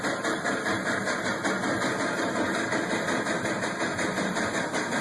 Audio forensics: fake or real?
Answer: real